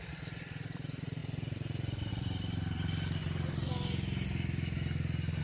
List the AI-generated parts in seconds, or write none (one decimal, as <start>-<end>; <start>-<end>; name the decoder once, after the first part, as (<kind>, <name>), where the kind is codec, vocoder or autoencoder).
0.0-3.2 (vocoder, BigVGAN v2)